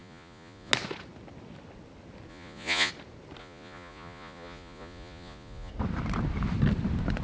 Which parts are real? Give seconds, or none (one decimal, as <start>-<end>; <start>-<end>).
0.7-2.3; 2.9-3.4; 5.7-7.2